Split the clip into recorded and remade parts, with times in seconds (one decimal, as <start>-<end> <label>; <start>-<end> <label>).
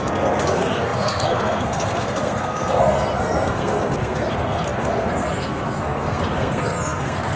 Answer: 0.0-7.4 remade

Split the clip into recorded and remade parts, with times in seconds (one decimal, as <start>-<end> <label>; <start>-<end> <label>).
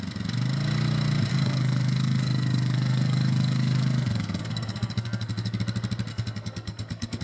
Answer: 0.0-1.3 recorded; 1.3-5.6 remade; 5.6-6.1 recorded; 6.1-7.2 remade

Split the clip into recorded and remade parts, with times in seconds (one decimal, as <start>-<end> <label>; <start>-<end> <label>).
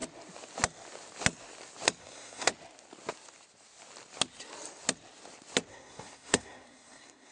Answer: 0.0-2.0 recorded; 2.0-2.5 remade; 2.5-5.7 recorded; 5.7-7.3 remade